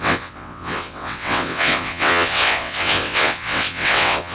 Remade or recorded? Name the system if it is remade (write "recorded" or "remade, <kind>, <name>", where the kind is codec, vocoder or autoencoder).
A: remade, vocoder, WaveNeXt